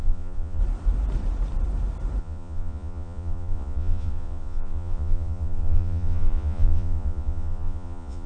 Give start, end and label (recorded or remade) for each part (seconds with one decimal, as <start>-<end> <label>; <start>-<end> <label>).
0.0-0.6 remade; 0.6-2.2 recorded; 2.2-8.3 remade